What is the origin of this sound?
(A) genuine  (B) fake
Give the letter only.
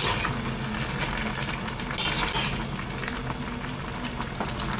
A